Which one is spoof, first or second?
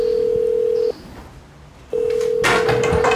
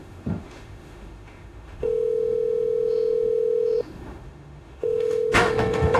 second